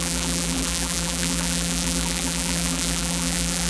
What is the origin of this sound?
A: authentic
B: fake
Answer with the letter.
B